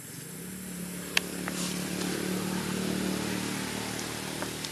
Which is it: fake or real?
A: real